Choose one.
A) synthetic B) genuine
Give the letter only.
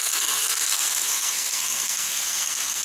A